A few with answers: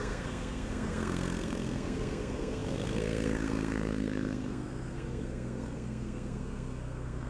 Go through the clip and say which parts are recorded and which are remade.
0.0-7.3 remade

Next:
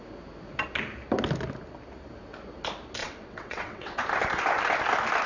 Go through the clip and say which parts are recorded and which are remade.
0.0-3.0 recorded; 3.0-4.0 remade; 4.0-5.3 recorded